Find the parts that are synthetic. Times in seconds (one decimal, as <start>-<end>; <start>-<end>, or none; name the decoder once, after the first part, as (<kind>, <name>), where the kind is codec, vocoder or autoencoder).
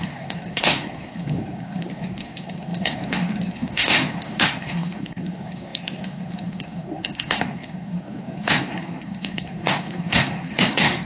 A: 0.0-11.0 (codec, SNAC)